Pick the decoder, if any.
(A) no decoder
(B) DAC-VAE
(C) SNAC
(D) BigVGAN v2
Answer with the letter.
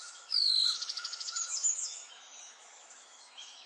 B